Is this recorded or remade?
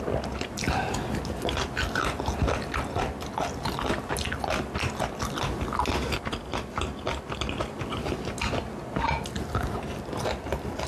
recorded